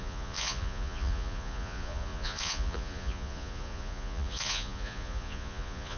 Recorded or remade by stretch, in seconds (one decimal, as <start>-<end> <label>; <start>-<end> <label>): 0.0-6.0 remade